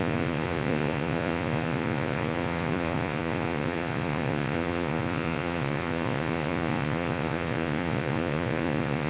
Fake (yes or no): yes